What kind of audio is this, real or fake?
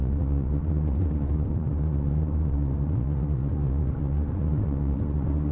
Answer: fake